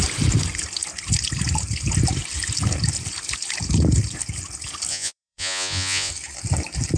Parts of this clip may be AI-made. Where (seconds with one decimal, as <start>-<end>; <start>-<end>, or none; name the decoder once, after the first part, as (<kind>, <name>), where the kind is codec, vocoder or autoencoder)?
4.9-6.1 (vocoder, Vocos)